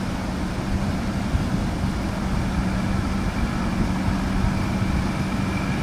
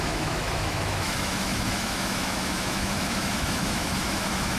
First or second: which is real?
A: first